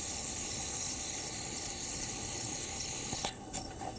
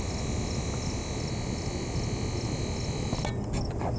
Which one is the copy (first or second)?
first